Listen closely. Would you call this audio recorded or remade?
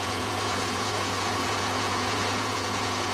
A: remade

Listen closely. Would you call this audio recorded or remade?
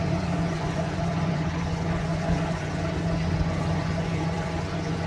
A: remade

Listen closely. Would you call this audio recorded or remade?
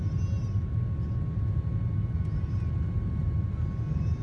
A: recorded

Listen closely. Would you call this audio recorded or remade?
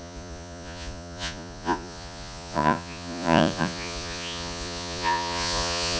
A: remade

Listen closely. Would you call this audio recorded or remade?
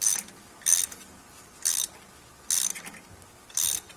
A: recorded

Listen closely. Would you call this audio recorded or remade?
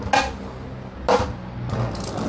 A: recorded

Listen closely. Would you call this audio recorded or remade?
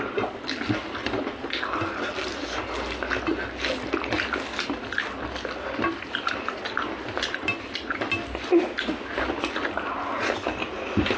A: recorded